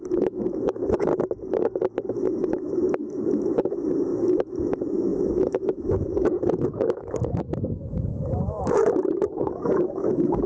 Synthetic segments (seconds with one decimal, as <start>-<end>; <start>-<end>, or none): 0.0-1.1; 2.1-10.5